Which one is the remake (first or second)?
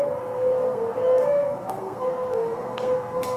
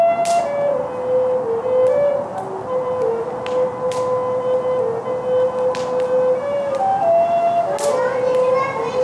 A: first